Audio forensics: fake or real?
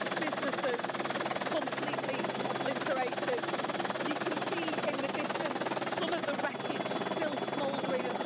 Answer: real